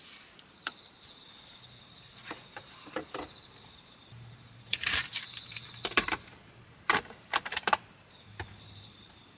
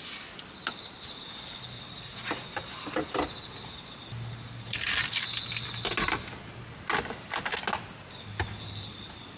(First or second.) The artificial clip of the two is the first